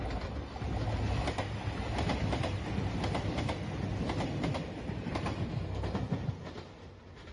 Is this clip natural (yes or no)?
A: yes